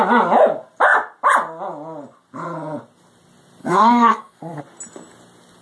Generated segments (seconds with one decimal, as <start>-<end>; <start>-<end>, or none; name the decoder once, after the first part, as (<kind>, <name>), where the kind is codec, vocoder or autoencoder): 3.6-4.6 (codec, SNAC)